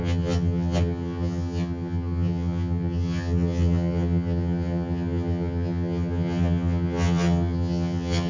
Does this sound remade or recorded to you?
remade